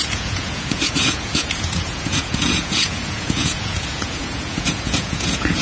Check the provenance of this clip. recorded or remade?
remade